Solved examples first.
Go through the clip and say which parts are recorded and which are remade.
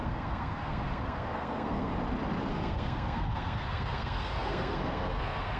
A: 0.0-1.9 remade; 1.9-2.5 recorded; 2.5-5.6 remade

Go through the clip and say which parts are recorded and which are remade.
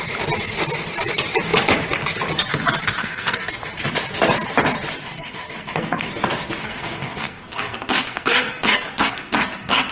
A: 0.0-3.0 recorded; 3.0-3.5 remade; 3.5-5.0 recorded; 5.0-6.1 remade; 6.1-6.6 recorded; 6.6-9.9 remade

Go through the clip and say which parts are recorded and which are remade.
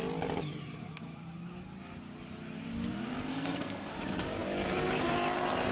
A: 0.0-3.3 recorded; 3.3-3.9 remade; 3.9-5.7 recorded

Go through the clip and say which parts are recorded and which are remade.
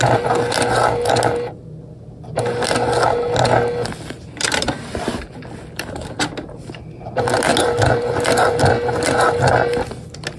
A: 0.0-10.4 recorded